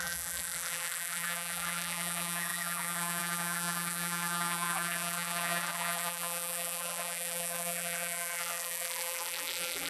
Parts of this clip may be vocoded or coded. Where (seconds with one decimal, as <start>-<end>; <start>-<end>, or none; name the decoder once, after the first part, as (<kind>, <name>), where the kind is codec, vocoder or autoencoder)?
0.0-9.9 (vocoder, BigVGAN v2)